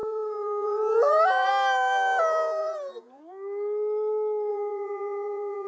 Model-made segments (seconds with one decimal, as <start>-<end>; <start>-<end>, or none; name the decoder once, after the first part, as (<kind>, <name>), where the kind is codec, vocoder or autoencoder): 0.0-1.5 (vocoder, Vocos); 2.6-3.2; 4.5-5.7